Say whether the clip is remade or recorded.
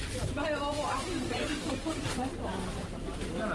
recorded